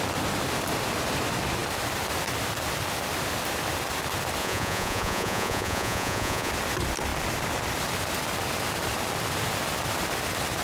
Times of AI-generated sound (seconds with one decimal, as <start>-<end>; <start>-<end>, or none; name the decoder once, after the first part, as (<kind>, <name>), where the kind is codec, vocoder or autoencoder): 4.4-6.5 (vocoder, Vocos)